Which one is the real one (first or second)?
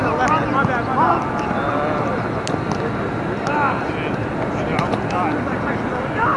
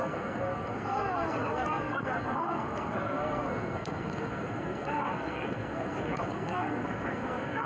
first